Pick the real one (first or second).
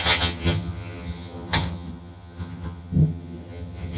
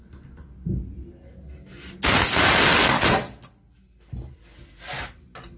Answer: second